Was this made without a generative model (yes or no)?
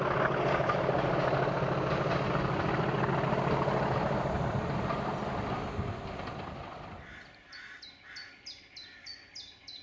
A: yes